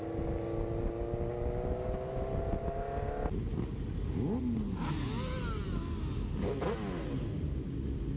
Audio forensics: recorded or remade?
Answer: recorded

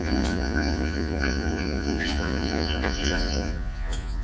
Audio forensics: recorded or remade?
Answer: remade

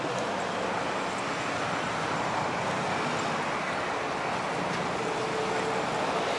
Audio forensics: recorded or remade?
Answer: recorded